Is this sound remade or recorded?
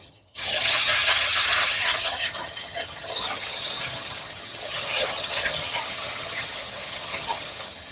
remade